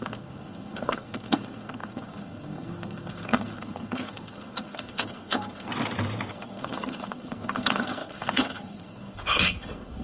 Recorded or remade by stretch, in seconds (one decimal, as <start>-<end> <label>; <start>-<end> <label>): 0.0-5.7 remade; 5.7-6.3 recorded; 6.3-10.0 remade